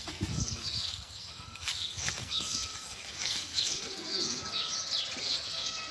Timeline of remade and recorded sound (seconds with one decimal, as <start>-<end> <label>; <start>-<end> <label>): 0.0-4.7 remade; 4.7-5.2 recorded; 5.2-5.9 remade